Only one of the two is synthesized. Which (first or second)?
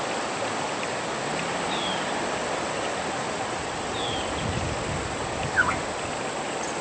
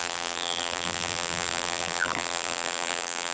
second